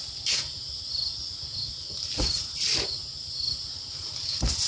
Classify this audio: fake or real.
real